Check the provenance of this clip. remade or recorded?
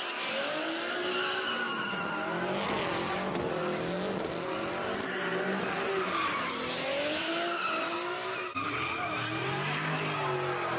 recorded